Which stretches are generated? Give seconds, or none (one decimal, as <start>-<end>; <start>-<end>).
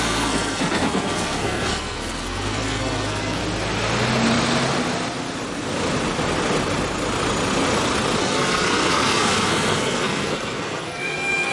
0.0-3.4; 8.2-11.5